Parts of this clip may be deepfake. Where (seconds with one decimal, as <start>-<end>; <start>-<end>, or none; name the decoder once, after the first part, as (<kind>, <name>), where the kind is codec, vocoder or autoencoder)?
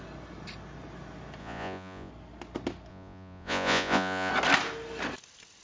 1.4-2.1 (vocoder, Vocos); 2.9-4.3